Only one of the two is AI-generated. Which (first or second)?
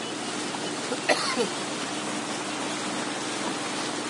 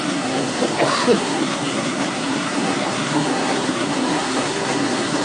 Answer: second